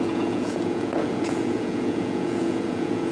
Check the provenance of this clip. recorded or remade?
remade